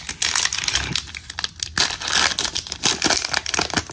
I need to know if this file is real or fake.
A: real